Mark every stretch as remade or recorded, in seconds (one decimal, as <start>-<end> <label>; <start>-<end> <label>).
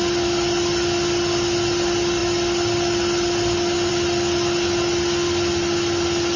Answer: 0.0-6.4 recorded